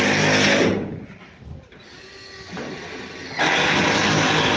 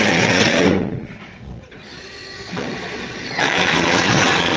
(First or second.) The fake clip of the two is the second